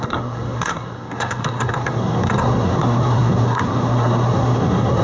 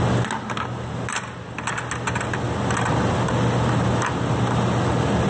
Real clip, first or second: second